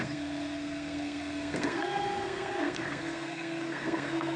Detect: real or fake fake